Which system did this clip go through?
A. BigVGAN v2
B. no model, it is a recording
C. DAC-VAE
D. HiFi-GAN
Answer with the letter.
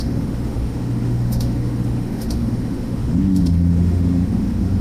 C